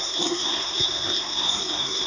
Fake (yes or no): yes